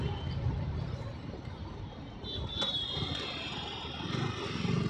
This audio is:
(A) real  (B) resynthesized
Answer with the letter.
A